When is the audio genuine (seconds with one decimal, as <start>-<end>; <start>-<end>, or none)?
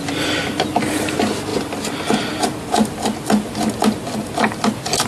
0.0-5.1